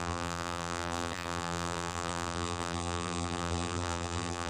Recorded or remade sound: remade